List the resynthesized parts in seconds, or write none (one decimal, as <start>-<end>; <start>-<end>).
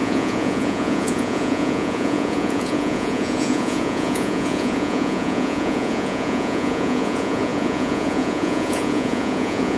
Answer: 0.0-9.8